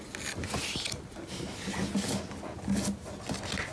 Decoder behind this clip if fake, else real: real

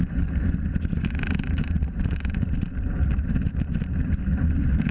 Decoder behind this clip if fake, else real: fake, vocoder, BigVGAN v2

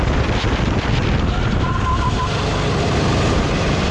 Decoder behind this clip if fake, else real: real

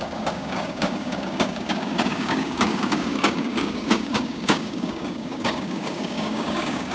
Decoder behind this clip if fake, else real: fake, codec, DAC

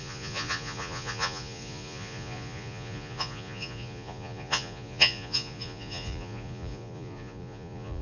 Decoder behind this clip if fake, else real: fake, vocoder, Vocos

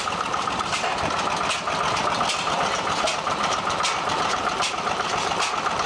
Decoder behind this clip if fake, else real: real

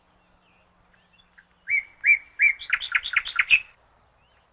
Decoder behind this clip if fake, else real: real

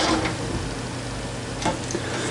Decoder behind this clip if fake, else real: real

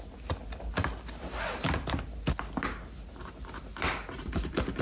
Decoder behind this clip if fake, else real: real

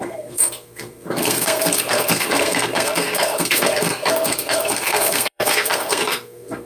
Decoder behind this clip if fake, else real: fake, codec, SNAC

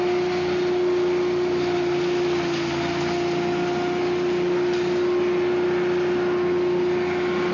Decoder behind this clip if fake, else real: real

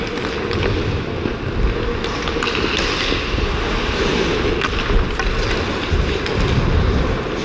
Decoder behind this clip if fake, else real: real